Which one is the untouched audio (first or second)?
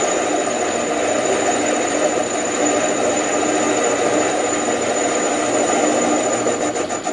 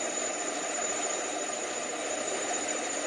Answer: first